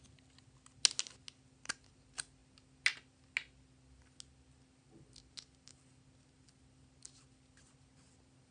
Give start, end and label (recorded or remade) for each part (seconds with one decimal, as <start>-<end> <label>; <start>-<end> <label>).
0.0-8.5 recorded

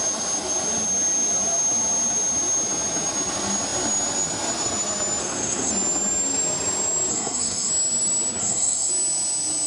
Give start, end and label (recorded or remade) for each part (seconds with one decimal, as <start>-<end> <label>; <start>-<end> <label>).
0.0-5.2 recorded; 5.2-5.7 remade; 5.7-7.1 recorded; 7.1-7.7 remade; 7.7-8.4 recorded; 8.4-8.9 remade; 8.9-9.7 recorded

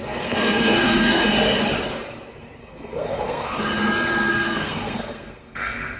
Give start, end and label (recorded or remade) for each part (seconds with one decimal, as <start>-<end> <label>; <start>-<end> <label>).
0.0-1.2 remade; 1.2-2.6 recorded; 2.6-3.6 remade; 3.6-4.3 recorded; 4.3-6.0 remade

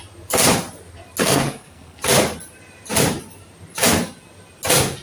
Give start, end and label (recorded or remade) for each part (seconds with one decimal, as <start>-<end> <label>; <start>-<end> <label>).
0.0-1.2 recorded; 1.2-2.0 remade; 2.0-5.0 recorded

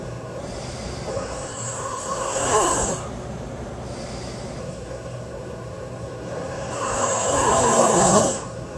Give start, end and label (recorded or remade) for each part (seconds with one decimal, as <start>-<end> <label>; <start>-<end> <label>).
0.0-0.4 remade; 0.4-1.1 recorded; 1.1-2.9 remade; 2.9-4.6 recorded; 4.6-8.8 remade

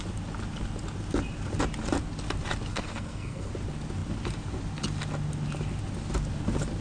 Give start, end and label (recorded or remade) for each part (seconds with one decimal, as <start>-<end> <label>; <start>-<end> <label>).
0.0-2.7 recorded; 2.7-3.5 remade; 3.5-6.8 recorded

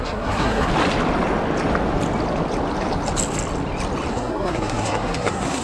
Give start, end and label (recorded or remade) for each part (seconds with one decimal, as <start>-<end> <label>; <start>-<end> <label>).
0.0-0.7 remade; 0.7-4.1 recorded; 4.1-5.6 remade